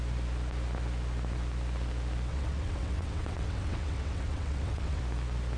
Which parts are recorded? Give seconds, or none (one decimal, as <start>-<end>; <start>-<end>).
0.0-2.3; 5.0-5.6